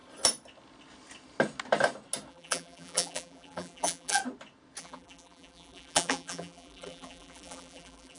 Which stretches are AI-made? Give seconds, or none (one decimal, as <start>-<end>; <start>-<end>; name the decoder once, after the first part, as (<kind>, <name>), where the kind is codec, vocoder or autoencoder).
2.3-4.2 (vocoder, BigVGAN v2); 4.8-8.2